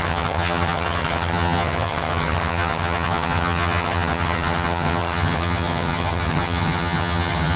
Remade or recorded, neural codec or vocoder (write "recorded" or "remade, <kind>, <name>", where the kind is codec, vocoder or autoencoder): remade, vocoder, HiFi-GAN